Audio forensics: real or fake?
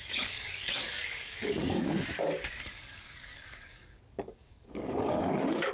fake